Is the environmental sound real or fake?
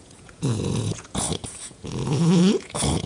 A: fake